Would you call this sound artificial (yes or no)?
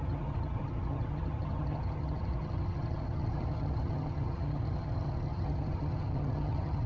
yes